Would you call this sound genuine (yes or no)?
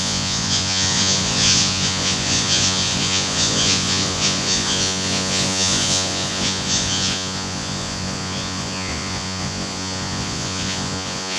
no